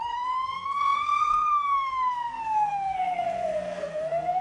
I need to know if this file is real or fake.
fake